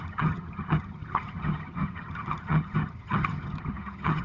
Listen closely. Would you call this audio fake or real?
fake